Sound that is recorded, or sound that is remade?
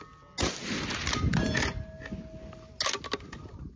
recorded